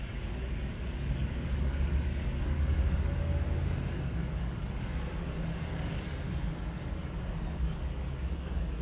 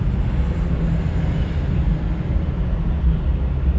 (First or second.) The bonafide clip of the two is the second